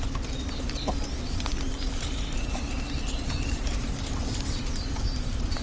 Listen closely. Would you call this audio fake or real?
real